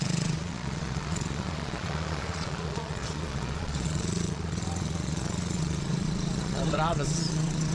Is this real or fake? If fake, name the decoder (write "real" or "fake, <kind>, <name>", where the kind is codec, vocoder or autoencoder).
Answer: fake, vocoder, Vocos